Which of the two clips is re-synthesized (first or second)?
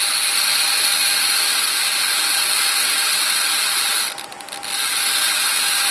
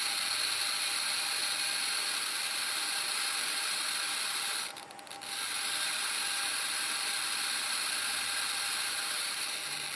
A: second